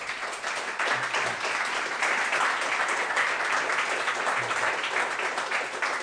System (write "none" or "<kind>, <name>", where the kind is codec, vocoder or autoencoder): none